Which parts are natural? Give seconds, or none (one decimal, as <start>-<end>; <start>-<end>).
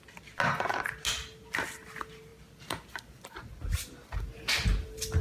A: 0.0-5.2